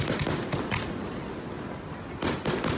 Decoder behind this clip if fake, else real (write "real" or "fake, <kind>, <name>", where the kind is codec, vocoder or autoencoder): real